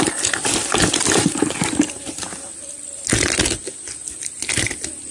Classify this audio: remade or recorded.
recorded